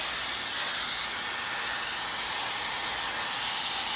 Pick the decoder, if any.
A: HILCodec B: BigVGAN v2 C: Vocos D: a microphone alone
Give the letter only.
D